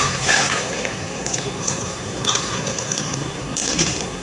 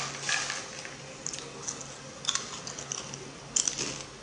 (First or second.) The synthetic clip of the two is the first